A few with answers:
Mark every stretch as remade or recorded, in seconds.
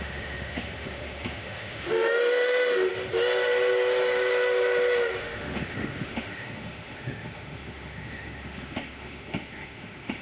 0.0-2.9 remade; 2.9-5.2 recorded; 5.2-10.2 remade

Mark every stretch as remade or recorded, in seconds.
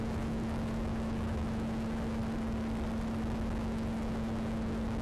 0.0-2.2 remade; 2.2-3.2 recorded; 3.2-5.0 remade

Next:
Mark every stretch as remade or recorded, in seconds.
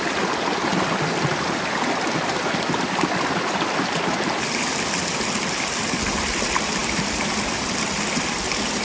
0.0-6.8 recorded; 6.8-7.3 remade; 7.3-8.8 recorded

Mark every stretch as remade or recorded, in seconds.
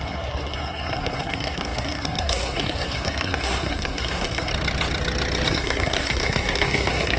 0.0-4.5 remade; 4.5-5.5 recorded; 5.5-7.2 remade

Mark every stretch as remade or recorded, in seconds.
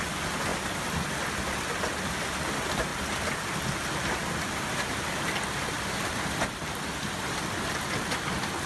0.0-8.7 recorded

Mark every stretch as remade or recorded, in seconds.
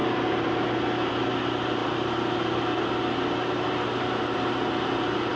0.0-5.4 recorded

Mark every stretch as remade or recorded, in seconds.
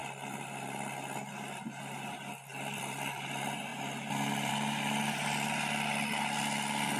0.0-2.5 recorded; 2.5-3.3 remade; 3.3-7.0 recorded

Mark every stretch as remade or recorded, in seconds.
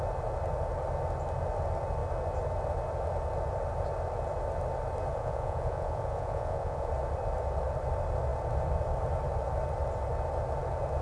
0.0-5.1 recorded; 5.1-6.9 remade; 6.9-11.0 recorded